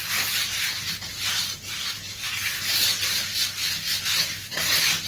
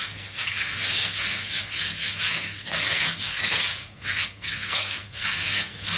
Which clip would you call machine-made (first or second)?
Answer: second